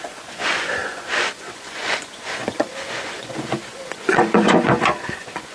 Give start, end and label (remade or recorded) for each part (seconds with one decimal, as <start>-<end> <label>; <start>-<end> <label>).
0.0-5.5 remade